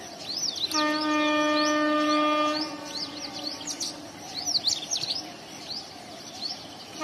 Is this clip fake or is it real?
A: real